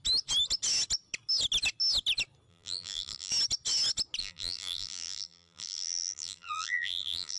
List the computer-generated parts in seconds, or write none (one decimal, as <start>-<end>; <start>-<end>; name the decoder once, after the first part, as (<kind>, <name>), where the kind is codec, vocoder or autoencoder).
2.5-3.3 (vocoder, BigVGAN v2); 4.2-7.4